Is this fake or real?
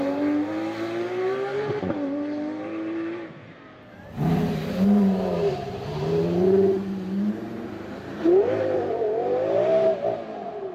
fake